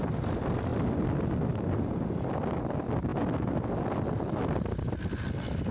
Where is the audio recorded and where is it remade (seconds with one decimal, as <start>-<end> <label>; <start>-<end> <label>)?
0.0-5.7 recorded